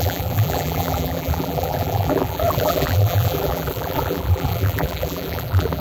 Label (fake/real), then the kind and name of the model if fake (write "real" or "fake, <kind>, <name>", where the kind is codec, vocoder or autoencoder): fake, vocoder, BigVGAN v2